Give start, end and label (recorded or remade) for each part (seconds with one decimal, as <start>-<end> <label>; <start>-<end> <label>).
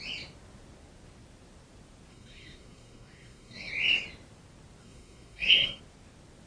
0.0-2.1 recorded; 2.1-3.7 remade; 3.7-4.8 recorded; 4.8-5.8 remade; 5.8-6.5 recorded